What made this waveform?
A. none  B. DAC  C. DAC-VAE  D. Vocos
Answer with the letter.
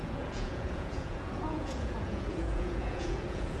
D